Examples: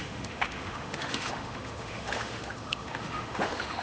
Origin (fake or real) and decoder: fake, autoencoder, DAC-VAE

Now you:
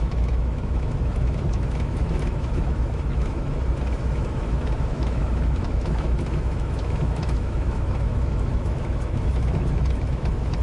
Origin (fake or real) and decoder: fake, autoencoder, DAC-VAE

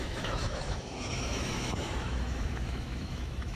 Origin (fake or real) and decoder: fake, autoencoder, DAC-VAE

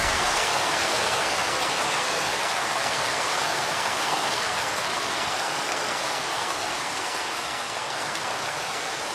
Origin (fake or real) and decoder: fake, codec, SNAC